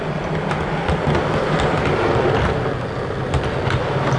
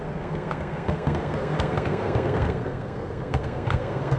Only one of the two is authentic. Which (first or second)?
first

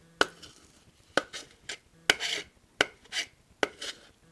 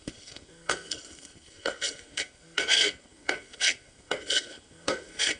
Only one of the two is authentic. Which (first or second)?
first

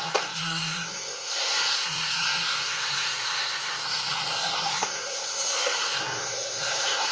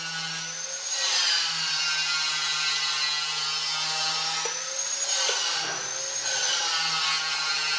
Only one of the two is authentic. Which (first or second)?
second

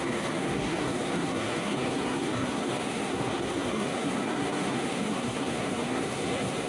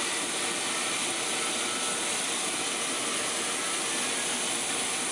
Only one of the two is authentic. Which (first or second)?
second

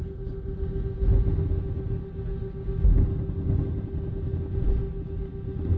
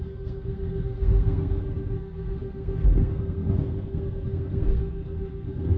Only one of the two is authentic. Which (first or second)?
first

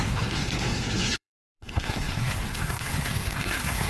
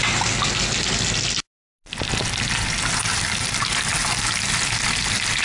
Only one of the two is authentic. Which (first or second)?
second